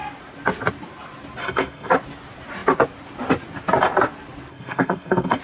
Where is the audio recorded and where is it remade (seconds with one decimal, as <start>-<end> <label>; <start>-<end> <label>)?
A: 0.0-1.4 recorded; 1.4-1.9 remade; 1.9-4.5 recorded; 4.5-5.4 remade